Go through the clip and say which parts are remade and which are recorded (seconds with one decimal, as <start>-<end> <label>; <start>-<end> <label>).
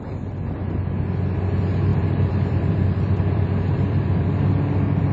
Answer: 0.0-1.9 recorded; 1.9-4.4 remade; 4.4-5.1 recorded